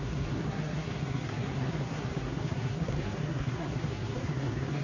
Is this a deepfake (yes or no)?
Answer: yes